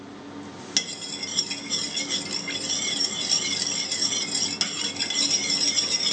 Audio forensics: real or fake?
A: real